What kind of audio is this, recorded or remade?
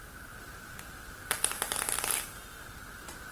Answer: remade